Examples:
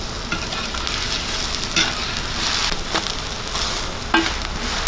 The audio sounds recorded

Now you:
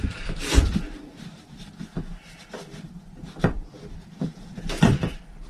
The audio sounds remade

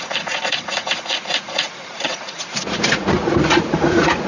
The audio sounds remade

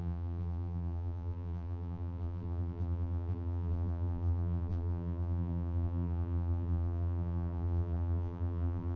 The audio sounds remade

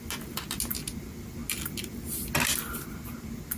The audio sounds recorded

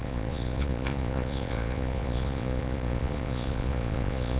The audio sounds remade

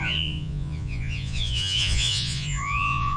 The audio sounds remade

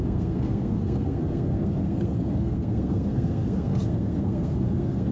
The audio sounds remade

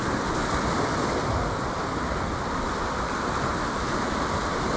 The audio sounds recorded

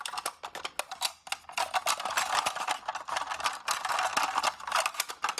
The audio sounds recorded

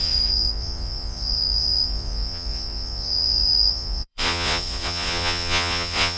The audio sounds remade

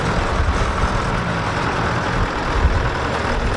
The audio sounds recorded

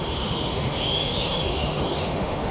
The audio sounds remade